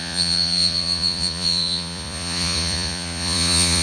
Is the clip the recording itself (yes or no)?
no